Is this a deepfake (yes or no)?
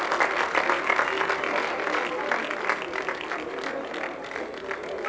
no